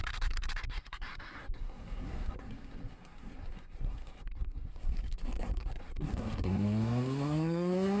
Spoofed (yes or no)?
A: yes